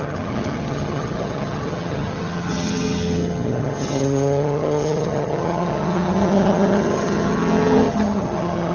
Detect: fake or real fake